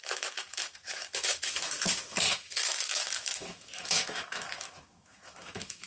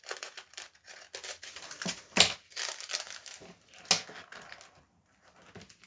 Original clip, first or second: second